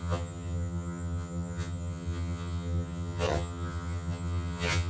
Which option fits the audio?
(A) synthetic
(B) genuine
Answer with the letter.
A